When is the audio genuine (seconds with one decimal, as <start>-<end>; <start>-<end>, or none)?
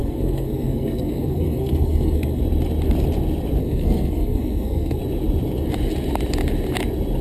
2.4-3.6; 5.0-7.2